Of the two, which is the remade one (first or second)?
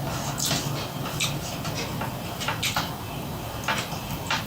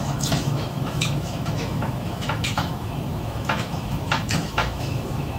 second